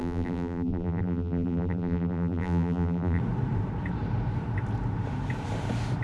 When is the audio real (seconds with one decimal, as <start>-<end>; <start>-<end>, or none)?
3.2-6.0